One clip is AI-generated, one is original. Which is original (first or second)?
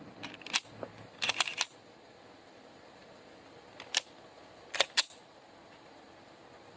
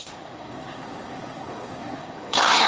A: first